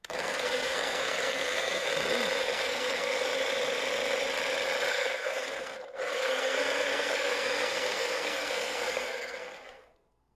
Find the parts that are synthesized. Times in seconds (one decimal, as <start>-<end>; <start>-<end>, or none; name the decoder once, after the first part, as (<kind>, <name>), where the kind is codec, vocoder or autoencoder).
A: 0.0-1.9 (codec, SNAC); 2.4-3.3; 4.9-10.3